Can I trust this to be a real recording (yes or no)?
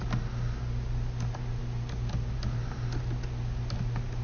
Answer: yes